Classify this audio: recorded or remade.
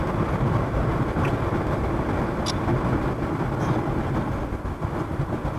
recorded